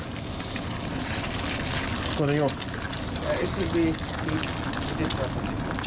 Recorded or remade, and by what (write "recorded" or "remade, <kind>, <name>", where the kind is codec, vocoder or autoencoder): recorded